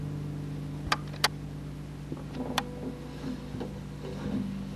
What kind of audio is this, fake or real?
real